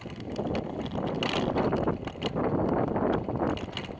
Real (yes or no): yes